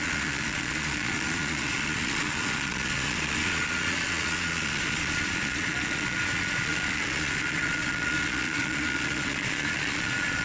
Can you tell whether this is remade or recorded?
remade